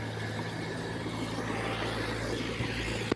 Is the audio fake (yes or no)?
no